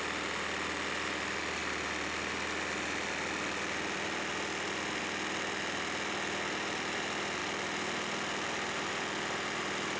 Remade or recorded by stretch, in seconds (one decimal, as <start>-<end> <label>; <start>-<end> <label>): 0.0-10.0 recorded